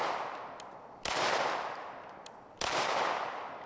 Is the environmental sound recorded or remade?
recorded